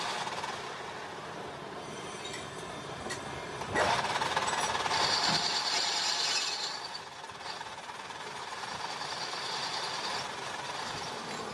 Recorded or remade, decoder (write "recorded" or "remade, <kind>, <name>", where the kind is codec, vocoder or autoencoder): recorded